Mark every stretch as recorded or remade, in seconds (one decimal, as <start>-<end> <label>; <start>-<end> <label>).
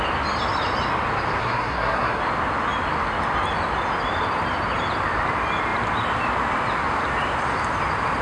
0.0-1.4 recorded; 1.4-2.2 remade; 2.2-8.2 recorded